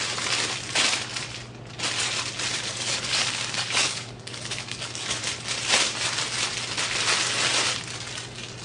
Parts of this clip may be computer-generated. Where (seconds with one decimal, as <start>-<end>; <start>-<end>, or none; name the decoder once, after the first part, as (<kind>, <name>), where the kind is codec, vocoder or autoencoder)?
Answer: 2.5-5.2 (codec, DAC)